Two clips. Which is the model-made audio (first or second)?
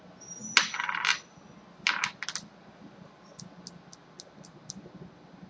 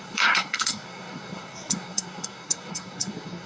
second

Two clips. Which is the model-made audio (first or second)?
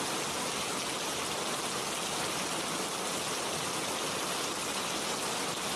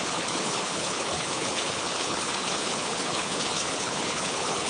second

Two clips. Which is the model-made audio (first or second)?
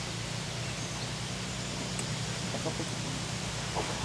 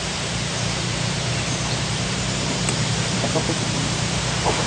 second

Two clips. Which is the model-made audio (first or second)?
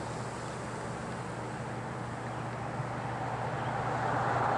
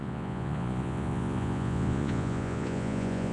second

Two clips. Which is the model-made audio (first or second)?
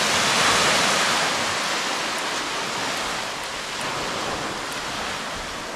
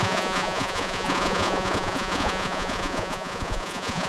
second